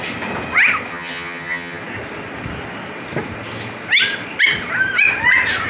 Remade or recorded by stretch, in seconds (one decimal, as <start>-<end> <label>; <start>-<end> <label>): 0.0-0.9 recorded; 0.9-1.8 remade; 1.8-5.7 recorded